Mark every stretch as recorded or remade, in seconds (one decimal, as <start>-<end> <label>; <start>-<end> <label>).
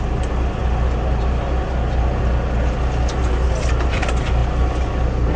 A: 0.0-5.4 recorded